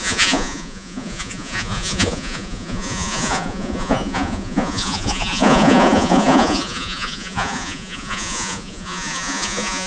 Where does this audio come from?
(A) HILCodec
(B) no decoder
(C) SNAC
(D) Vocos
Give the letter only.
D